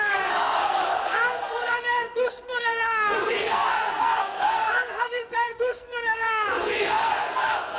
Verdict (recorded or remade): remade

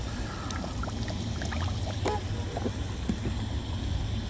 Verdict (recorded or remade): recorded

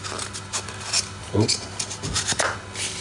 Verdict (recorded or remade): recorded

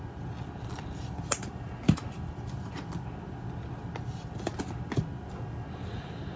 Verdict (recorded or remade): recorded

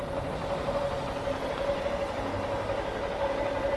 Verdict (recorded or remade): recorded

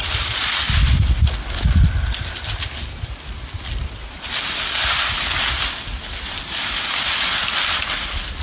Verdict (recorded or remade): recorded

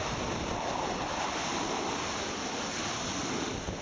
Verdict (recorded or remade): recorded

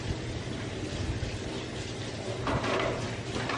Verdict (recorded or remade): recorded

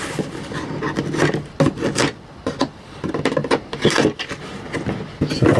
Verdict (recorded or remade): recorded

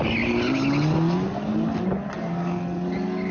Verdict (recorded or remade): recorded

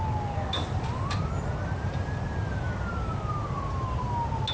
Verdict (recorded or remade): recorded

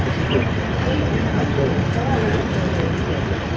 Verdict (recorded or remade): recorded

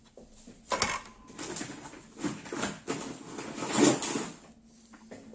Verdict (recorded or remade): recorded